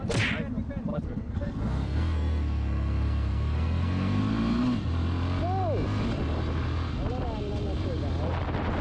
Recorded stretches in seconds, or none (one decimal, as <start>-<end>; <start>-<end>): 0.0-0.9; 4.2-8.8